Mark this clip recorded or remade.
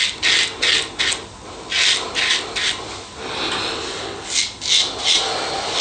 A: recorded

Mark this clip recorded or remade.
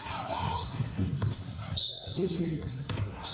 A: remade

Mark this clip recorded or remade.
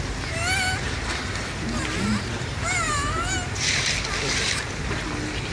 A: recorded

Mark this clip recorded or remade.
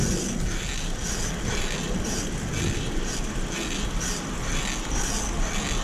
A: recorded